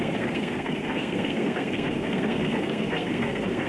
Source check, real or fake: fake